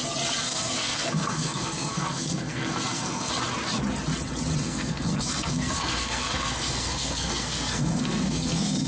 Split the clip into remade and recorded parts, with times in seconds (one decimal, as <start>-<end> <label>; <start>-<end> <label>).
0.0-0.4 recorded; 0.4-3.3 remade; 3.3-4.6 recorded; 4.6-8.9 remade

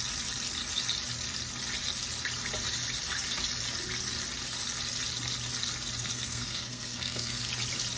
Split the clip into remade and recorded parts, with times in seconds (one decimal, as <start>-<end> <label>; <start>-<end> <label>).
0.0-6.1 recorded; 6.1-7.5 remade; 7.5-8.0 recorded